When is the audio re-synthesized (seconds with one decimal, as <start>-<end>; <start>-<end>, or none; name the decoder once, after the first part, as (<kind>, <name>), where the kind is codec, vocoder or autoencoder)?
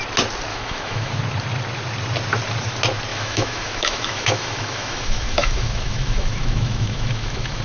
0.5-1.2 (autoencoder, DAC-VAE); 3.1-7.6